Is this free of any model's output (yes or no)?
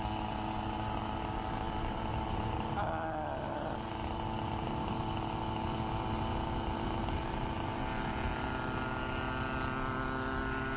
yes